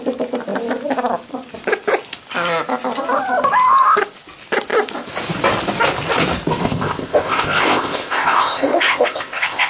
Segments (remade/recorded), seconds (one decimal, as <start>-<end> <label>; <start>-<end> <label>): 0.0-6.6 recorded; 6.6-9.7 remade